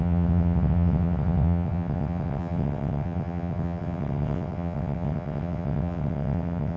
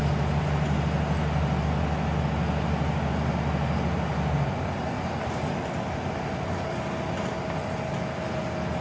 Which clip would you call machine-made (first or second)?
first